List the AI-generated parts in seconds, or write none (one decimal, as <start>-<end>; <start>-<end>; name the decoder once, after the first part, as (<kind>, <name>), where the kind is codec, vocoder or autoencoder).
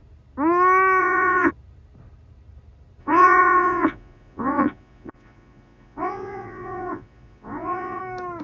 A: 1.0-1.5 (vocoder, Vocos); 3.0-8.0